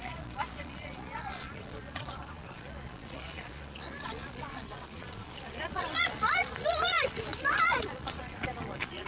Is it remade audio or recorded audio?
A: remade